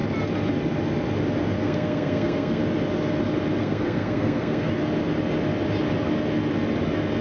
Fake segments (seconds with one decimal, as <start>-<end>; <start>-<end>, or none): 1.6-2.6; 3.6-4.7